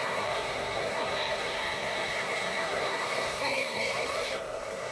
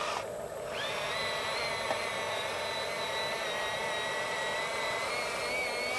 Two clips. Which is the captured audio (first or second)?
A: second